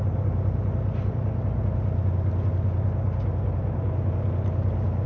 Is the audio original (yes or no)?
yes